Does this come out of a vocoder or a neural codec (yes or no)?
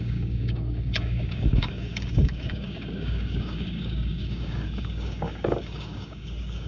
yes